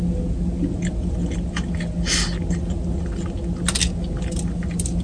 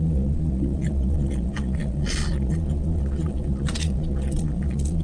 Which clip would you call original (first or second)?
first